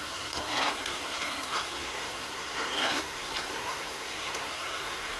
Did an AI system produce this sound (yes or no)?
yes